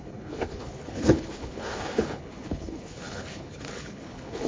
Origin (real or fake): fake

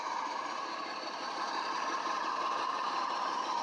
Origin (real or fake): fake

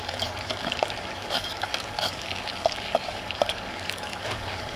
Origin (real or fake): fake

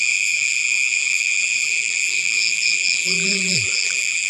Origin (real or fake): fake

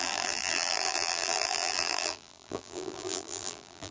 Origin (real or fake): fake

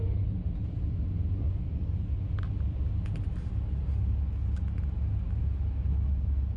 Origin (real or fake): real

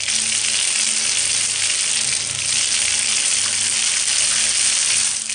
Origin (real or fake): real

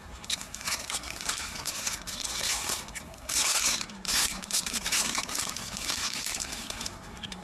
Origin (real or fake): fake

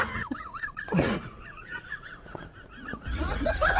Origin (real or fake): fake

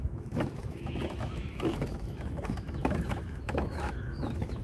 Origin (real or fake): fake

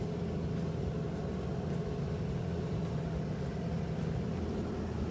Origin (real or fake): real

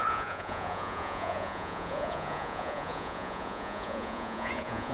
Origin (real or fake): fake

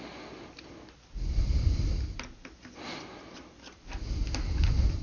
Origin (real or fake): real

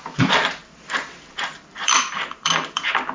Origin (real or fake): fake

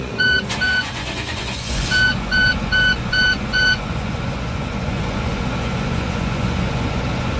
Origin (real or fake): fake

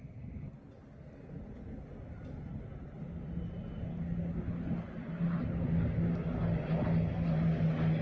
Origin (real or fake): real